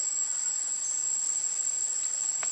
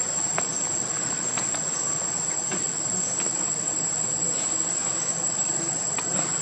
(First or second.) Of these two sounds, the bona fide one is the first